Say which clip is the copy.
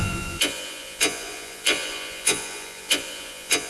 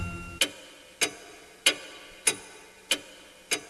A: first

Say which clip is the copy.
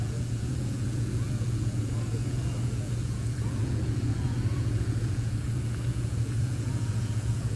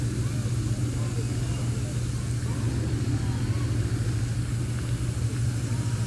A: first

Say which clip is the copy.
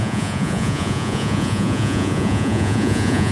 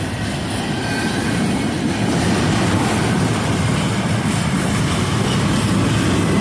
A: first